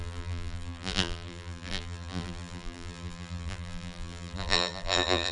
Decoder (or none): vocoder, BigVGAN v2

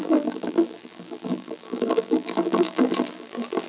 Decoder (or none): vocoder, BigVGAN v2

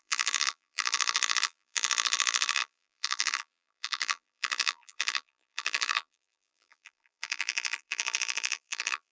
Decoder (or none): vocoder, BigVGAN v2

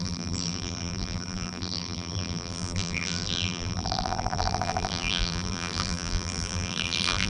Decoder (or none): vocoder, BigVGAN v2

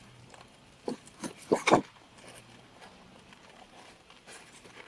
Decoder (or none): vocoder, BigVGAN v2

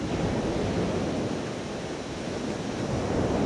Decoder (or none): none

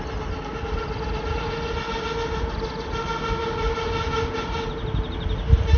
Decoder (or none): none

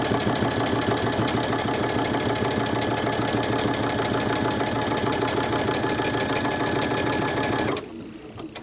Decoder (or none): none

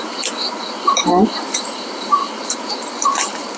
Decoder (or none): vocoder, BigVGAN v2